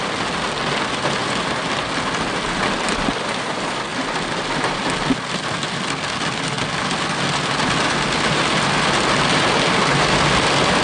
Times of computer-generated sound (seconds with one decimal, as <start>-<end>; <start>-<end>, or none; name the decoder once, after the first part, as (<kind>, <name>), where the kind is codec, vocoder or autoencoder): none